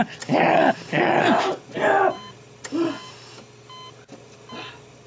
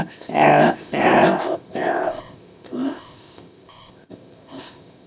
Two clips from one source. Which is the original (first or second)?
first